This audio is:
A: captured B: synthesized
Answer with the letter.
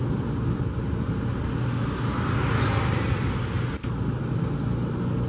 A